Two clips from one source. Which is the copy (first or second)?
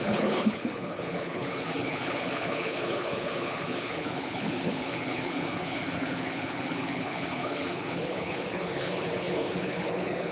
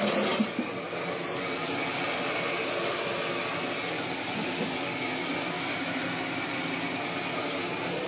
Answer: first